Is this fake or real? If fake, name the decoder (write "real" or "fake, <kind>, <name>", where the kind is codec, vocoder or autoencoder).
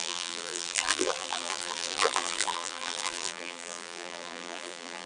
fake, vocoder, BigVGAN v2